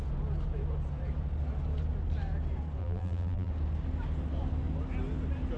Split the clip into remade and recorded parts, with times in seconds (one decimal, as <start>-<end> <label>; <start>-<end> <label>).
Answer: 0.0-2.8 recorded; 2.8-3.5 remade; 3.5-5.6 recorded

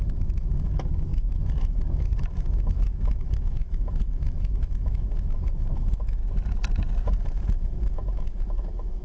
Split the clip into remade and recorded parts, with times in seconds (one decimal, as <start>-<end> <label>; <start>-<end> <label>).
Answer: 0.0-6.2 remade; 6.2-7.1 recorded; 7.1-9.0 remade

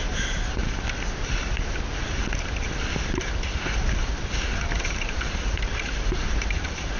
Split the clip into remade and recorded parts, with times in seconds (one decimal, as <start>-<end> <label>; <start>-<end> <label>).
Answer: 0.0-0.6 remade; 0.6-4.8 recorded; 4.8-7.0 remade

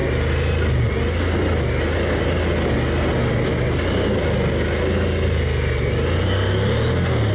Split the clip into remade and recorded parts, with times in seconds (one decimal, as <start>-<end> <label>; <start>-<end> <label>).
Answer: 0.0-7.3 recorded